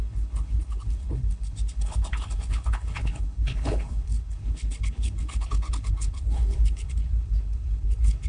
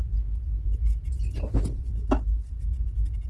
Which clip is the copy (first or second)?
first